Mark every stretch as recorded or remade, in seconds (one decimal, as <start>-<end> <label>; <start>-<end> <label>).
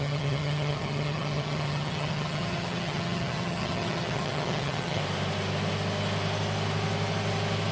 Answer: 0.0-5.0 remade; 5.0-7.7 recorded